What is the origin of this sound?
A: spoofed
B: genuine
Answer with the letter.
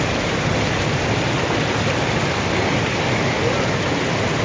B